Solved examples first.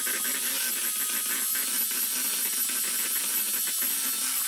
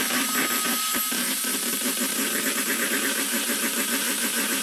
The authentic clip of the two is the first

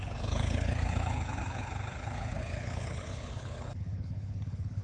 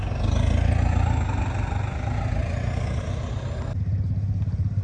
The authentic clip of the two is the second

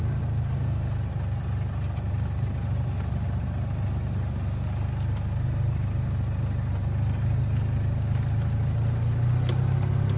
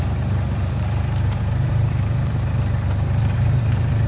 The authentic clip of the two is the first